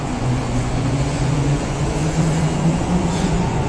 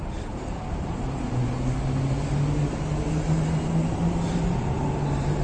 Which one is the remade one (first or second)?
first